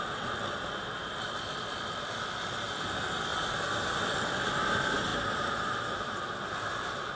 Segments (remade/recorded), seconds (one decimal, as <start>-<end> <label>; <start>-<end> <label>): 0.0-3.3 recorded; 3.3-4.0 remade; 4.0-5.1 recorded; 5.1-6.2 remade; 6.2-7.1 recorded